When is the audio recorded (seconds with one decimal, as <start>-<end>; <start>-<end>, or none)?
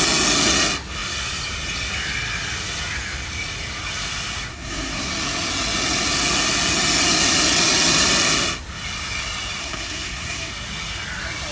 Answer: 0.0-4.5; 5.1-9.6; 10.5-11.5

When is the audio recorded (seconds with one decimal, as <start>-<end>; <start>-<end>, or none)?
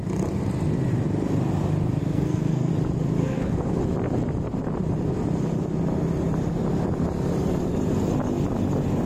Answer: 0.0-2.0; 2.7-3.2; 3.8-9.1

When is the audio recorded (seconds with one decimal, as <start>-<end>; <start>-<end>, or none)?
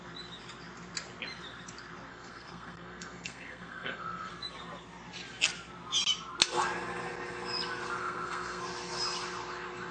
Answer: 0.0-2.1; 4.3-8.0; 8.6-9.9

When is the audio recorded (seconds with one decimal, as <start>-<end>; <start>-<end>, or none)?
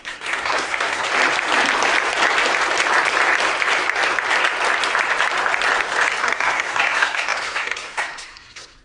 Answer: 1.1-6.2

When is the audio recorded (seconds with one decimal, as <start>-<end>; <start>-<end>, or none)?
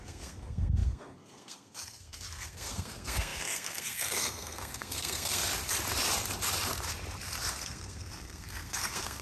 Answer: 5.4-7.5